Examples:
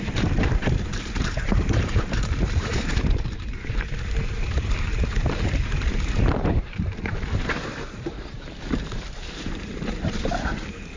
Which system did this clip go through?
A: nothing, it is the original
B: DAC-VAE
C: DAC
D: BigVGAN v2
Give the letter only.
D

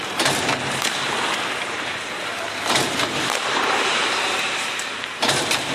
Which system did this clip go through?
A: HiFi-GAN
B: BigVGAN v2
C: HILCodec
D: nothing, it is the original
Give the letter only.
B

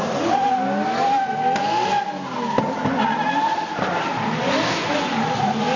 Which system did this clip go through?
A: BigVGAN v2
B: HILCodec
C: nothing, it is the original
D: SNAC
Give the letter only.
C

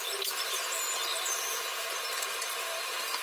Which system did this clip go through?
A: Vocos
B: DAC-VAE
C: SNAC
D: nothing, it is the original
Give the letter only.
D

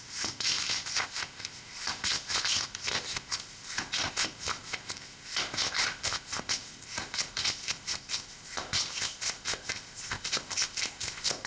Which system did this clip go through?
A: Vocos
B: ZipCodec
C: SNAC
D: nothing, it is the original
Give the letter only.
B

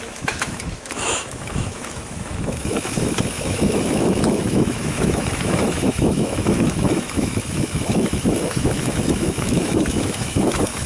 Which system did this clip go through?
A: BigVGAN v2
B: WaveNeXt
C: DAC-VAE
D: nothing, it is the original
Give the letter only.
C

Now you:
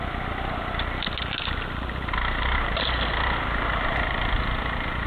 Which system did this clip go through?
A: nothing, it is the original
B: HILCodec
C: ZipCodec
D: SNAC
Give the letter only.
A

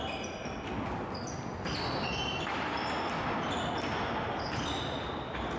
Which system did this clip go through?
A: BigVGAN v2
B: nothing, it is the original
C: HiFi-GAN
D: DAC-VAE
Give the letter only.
B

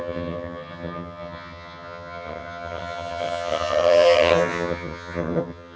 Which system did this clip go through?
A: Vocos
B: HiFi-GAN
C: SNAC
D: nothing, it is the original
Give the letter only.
B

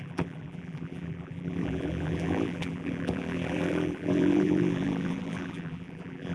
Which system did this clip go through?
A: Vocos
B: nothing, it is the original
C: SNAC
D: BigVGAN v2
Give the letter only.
D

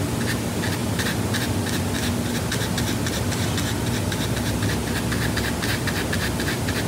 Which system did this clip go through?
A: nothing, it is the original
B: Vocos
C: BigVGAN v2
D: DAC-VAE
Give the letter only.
A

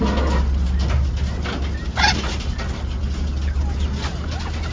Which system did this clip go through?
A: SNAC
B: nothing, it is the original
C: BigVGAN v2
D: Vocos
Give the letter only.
B